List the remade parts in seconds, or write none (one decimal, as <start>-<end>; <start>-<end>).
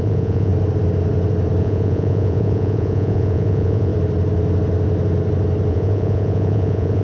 0.0-0.5; 1.6-3.9; 5.7-7.0